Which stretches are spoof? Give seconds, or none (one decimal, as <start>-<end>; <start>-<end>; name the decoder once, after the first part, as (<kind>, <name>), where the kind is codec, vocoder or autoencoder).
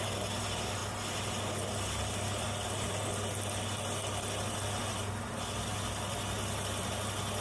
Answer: none